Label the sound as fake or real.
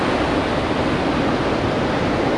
real